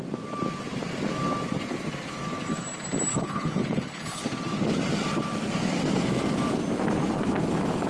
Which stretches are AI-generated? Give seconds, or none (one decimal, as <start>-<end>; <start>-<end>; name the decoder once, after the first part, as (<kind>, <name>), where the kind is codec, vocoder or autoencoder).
3.1-4.2 (codec, HILCodec)